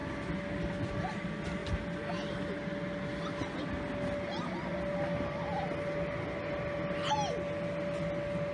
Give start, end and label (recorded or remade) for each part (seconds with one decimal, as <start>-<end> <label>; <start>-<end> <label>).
0.0-8.5 recorded